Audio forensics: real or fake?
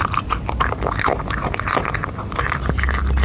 real